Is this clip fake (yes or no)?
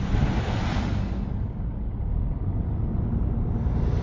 no